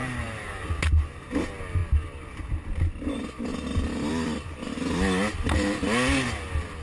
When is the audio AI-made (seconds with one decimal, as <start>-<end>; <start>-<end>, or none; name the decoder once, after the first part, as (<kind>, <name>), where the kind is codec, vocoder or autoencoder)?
0.0-0.7 (vocoder, BigVGAN v2)